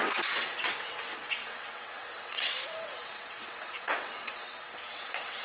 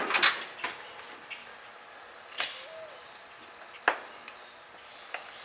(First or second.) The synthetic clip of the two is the first